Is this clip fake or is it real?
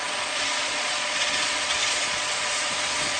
fake